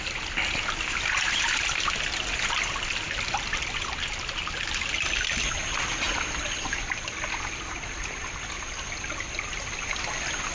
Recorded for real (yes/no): yes